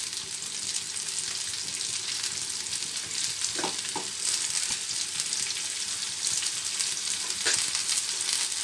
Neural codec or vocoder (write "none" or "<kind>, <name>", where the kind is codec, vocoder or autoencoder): none